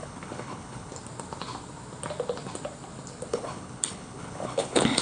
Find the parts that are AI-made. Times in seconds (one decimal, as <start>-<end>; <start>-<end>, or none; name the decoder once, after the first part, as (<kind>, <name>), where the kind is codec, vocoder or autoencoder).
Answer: 0.0-0.9 (codec, HILCodec); 3.3-5.0